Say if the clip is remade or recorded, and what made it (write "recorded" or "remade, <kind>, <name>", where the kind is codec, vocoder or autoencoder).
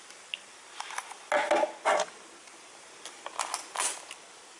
recorded